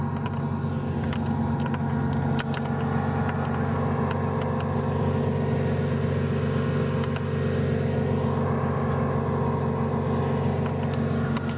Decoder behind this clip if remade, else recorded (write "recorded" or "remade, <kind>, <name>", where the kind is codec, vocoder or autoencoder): recorded